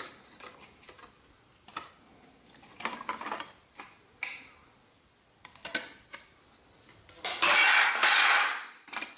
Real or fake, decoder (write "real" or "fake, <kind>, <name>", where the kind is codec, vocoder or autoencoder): real